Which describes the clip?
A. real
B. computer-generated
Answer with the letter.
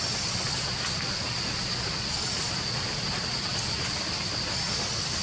A